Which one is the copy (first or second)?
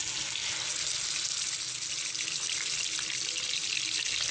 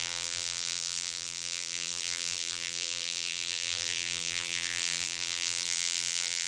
second